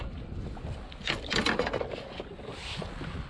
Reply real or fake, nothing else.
real